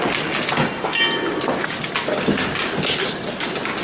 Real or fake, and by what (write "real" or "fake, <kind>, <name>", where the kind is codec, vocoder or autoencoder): real